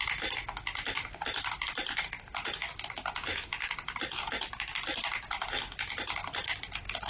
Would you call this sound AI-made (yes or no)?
no